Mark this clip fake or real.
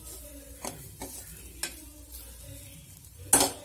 real